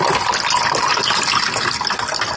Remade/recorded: recorded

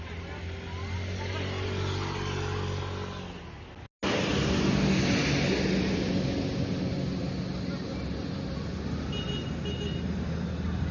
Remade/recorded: recorded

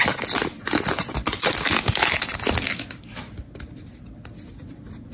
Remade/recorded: recorded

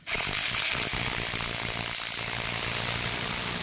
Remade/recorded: recorded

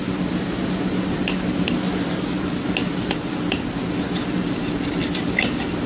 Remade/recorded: remade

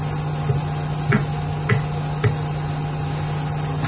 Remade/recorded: recorded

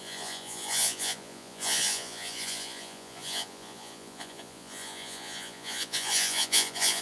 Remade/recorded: remade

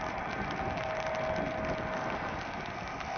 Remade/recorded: recorded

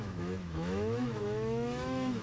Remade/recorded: remade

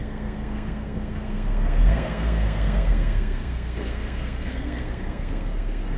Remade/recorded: remade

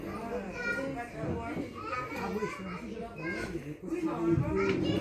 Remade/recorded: recorded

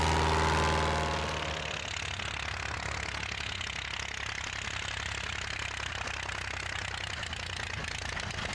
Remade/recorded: recorded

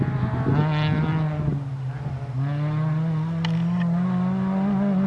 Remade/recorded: recorded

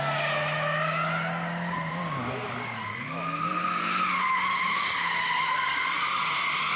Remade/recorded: recorded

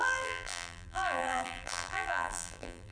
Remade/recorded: remade